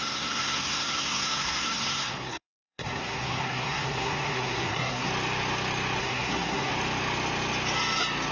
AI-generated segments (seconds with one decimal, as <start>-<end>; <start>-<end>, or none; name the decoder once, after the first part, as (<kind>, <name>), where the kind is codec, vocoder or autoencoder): 0.0-5.1 (codec, SNAC); 6.0-6.7

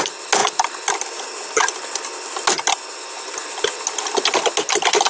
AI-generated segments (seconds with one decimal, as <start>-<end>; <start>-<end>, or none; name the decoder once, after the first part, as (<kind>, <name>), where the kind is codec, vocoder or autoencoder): none

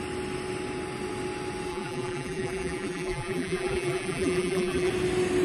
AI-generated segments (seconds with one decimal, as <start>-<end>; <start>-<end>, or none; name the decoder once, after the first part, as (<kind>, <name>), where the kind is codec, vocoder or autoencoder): 1.7-4.9 (vocoder, BigVGAN v2)

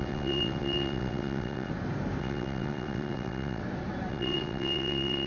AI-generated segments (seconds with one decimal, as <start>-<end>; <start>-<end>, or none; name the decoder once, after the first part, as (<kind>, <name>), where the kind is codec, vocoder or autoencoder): 0.0-1.7 (vocoder, WaveNeXt); 2.2-3.6; 4.1-5.3

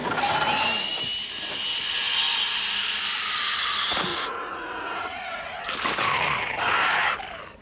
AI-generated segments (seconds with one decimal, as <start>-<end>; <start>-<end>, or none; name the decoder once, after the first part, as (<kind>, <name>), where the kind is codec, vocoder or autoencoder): 4.1-5.6 (vocoder, Vocos)

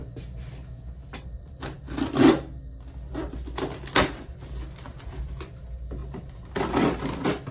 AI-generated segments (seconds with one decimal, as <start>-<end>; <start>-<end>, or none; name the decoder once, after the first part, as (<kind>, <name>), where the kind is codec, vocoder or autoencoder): 4.9-5.4 (vocoder, BigVGAN v2); 6.0-6.7

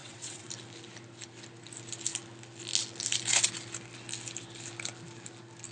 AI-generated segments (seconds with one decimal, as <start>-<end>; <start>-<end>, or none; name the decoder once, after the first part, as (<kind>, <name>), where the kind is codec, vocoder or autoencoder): 0.0-0.5 (vocoder, WaveNeXt)

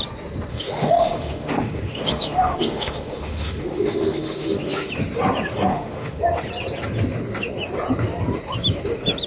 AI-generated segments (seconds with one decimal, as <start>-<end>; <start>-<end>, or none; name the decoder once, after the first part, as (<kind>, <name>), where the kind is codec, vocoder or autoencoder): 0.5-4.9 (autoencoder, DAC-VAE); 5.7-6.2